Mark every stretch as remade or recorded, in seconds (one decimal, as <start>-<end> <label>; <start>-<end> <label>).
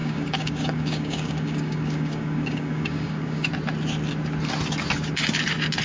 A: 0.0-3.5 remade; 3.5-5.8 recorded